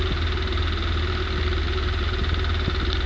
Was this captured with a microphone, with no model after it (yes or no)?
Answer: yes